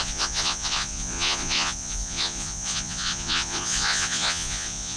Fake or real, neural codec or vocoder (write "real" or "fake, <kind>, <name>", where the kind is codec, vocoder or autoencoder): fake, vocoder, Vocos